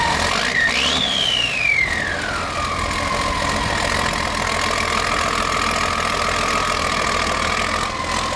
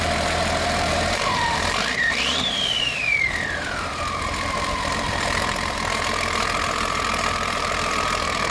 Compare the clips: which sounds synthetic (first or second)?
second